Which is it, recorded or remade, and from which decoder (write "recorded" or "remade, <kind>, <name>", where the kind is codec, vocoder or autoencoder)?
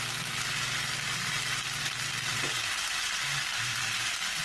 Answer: recorded